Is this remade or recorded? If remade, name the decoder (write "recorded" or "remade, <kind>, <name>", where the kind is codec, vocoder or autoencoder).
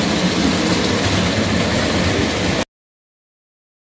recorded